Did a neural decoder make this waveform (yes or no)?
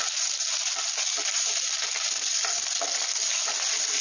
no